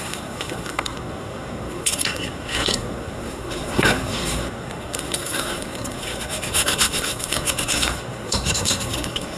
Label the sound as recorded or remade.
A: remade